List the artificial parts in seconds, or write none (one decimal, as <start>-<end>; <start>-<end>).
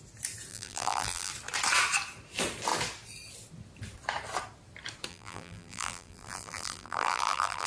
0.5-1.3; 5.1-7.7